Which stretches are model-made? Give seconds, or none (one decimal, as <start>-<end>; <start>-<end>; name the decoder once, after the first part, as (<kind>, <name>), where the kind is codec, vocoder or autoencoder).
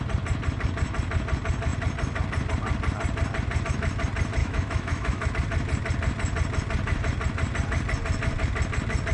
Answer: 4.4-5.3 (autoencoder, DAC-VAE)